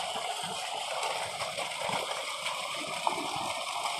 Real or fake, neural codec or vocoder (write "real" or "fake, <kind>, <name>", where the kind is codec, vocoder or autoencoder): real